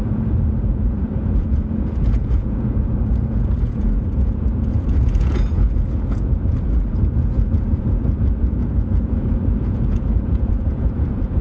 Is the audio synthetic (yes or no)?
yes